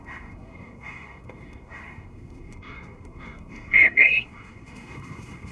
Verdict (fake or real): fake